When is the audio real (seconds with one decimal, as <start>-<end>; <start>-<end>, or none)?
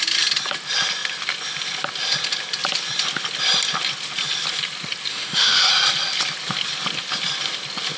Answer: 0.0-5.1; 5.7-8.0